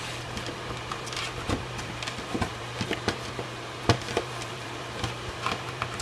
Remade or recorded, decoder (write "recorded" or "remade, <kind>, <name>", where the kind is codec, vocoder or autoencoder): remade, vocoder, BigVGAN v2